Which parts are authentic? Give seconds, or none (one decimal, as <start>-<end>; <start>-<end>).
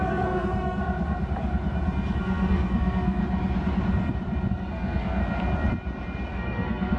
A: 0.8-2.2; 3.2-4.5; 5.2-6.3